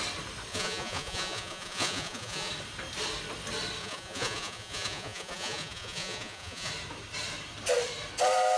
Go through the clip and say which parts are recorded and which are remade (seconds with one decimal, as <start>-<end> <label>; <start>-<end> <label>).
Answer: 0.0-0.5 recorded; 0.5-2.5 remade; 2.5-3.8 recorded; 3.8-6.7 remade; 6.7-8.6 recorded